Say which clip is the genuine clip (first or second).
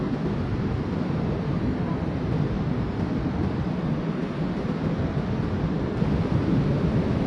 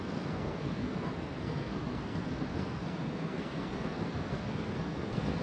first